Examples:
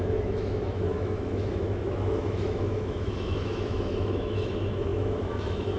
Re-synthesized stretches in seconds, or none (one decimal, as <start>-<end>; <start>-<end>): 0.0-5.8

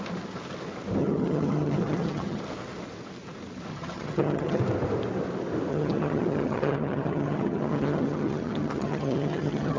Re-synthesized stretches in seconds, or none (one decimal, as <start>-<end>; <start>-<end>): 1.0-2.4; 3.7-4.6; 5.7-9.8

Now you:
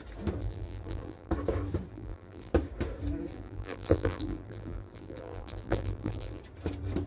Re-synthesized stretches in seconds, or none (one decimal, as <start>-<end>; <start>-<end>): 0.4-1.3; 1.9-2.5; 3.3-6.4

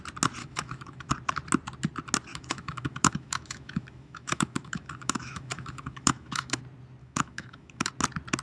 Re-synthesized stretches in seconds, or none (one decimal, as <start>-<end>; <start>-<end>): 0.4-1.1; 2.3-6.6; 7.0-7.9

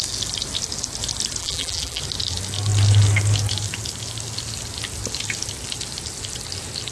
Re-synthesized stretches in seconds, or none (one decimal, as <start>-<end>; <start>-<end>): 1.4-2.0